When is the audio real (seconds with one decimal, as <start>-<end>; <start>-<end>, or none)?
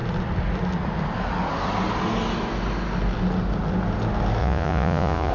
0.0-4.4